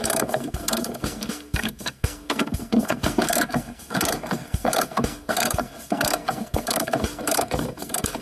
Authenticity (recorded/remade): remade